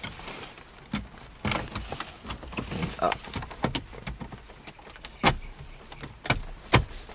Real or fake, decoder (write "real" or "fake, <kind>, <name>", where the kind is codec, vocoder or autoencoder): real